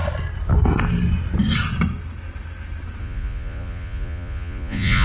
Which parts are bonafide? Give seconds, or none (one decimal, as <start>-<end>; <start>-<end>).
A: 0.0-3.0